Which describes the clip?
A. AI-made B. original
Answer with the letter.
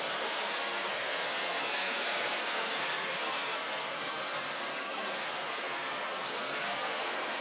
A